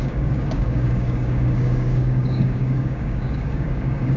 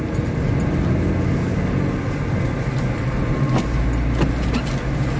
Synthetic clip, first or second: first